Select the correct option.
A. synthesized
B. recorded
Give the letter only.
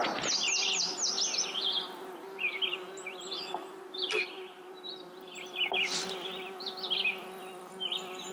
B